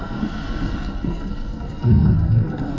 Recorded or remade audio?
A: remade